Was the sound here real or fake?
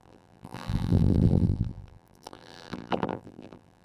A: fake